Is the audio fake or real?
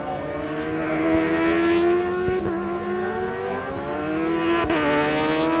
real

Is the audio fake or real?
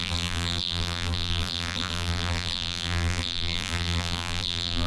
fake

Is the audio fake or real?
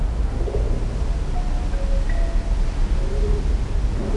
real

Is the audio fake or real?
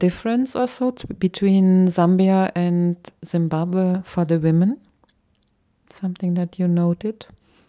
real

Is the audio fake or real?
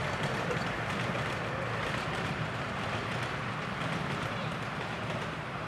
fake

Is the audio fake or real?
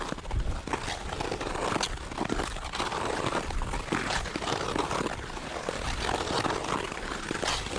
real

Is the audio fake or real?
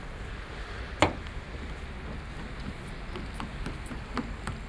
real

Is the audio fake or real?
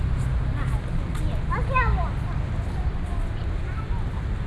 real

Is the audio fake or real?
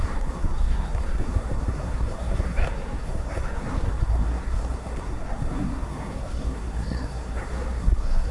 fake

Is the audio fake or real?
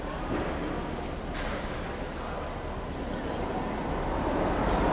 real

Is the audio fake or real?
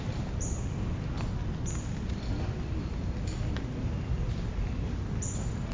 real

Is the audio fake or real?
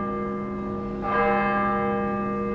real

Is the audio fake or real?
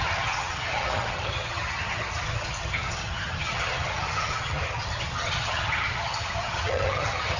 fake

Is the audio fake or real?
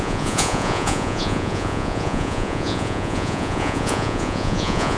fake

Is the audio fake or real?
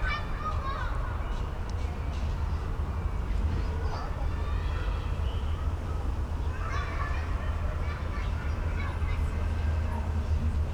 real